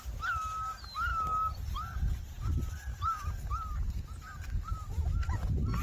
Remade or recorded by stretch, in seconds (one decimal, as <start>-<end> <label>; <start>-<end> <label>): 0.0-1.1 recorded; 1.1-2.5 remade; 2.5-2.9 recorded; 2.9-5.3 remade; 5.3-5.8 recorded